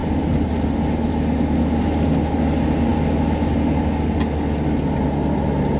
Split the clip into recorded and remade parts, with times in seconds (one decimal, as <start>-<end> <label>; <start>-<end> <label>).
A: 0.0-5.8 recorded